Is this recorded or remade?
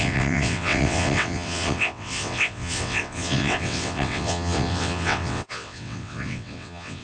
remade